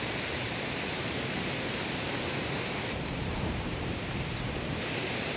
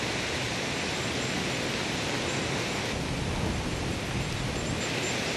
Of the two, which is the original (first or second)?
second